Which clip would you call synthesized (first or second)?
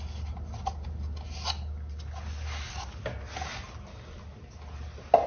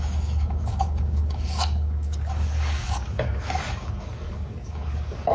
second